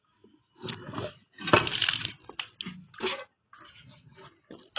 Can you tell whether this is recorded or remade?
recorded